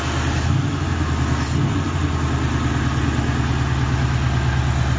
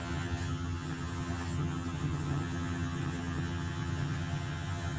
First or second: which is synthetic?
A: second